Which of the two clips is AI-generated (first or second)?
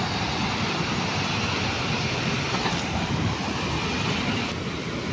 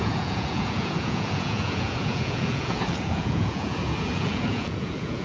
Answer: second